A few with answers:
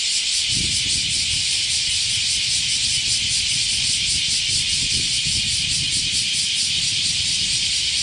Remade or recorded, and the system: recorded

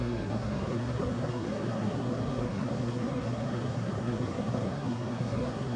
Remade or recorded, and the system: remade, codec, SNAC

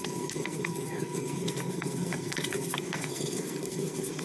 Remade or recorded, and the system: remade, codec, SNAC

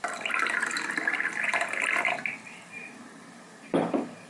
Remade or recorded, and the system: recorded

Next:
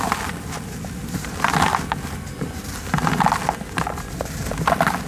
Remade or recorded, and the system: recorded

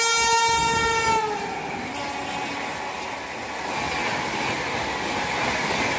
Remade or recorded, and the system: recorded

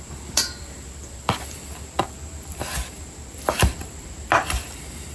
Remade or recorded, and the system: remade, vocoder, BigVGAN v2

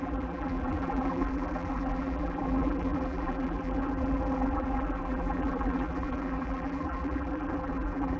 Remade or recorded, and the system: remade, vocoder, BigVGAN v2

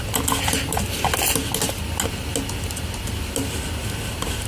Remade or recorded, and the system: recorded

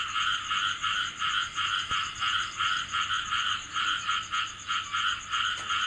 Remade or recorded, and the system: recorded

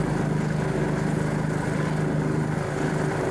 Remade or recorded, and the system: recorded